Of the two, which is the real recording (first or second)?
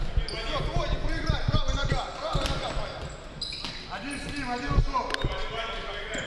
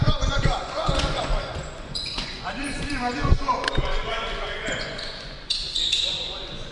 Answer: first